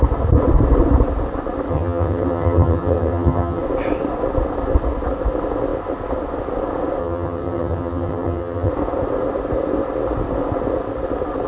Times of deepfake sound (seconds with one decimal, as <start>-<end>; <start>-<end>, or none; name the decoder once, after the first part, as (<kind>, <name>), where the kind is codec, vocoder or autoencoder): 1.7-3.6 (vocoder, HiFi-GAN); 7.0-8.7